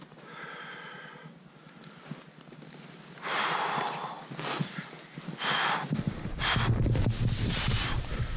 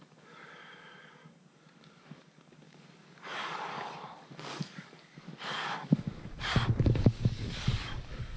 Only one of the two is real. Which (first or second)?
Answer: first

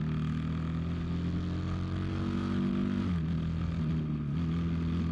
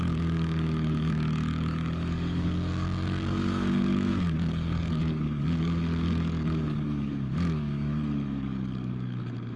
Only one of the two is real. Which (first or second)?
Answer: first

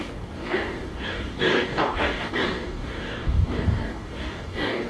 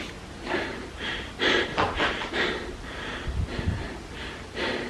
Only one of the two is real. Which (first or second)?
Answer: second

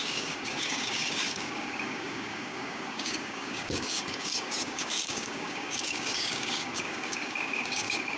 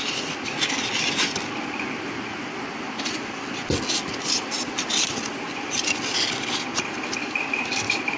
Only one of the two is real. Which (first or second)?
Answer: second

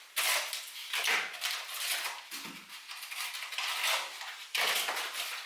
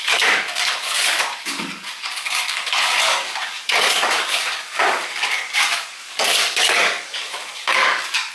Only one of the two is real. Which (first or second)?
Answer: first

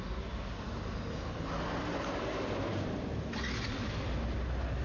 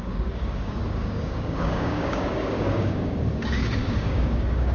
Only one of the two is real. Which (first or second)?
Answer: first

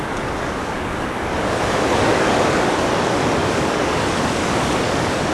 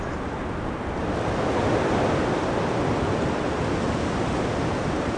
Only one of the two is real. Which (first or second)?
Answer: second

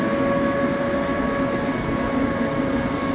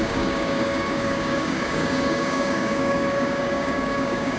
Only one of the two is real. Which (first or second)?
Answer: first